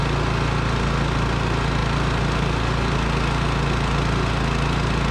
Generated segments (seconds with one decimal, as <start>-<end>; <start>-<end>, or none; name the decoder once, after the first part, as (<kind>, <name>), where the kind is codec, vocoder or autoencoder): none